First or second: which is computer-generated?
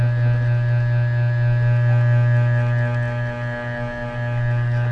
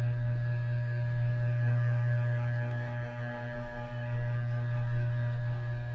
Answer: second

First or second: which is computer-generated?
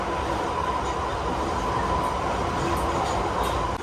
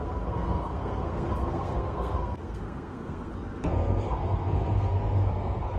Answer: second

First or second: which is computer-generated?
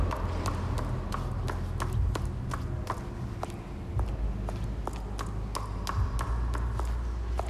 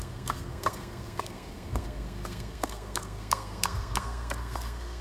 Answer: second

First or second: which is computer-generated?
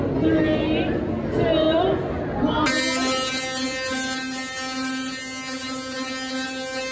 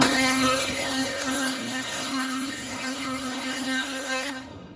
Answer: second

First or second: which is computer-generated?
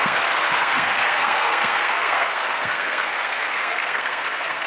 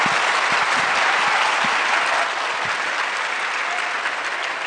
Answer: first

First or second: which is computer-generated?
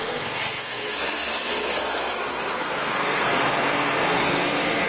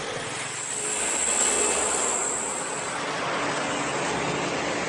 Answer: first